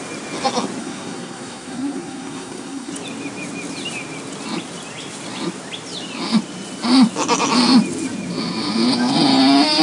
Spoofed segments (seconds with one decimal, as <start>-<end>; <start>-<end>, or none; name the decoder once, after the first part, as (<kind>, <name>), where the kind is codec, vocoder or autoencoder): 0.8-2.9 (codec, SNAC)